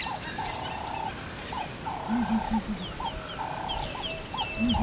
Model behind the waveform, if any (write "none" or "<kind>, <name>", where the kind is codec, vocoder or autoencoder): none